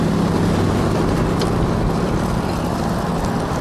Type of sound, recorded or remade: recorded